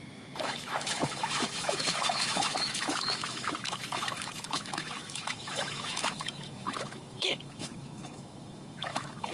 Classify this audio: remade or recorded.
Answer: remade